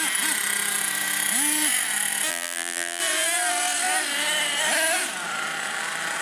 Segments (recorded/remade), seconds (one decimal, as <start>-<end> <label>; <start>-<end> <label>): 0.0-2.3 recorded; 2.3-3.0 remade; 3.0-6.2 recorded